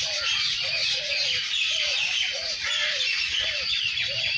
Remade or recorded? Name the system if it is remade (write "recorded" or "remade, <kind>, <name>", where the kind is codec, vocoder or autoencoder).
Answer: remade, vocoder, Vocos